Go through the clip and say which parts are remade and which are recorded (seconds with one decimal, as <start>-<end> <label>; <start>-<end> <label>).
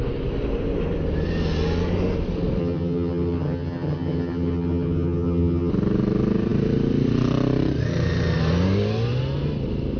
0.0-2.6 recorded; 2.6-5.7 remade; 5.7-10.0 recorded